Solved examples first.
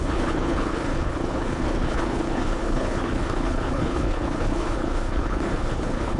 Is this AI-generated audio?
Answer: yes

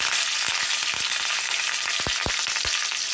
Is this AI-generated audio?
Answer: no